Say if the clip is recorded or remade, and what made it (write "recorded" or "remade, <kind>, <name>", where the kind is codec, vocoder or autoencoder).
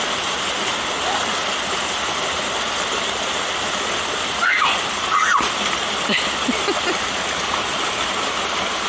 recorded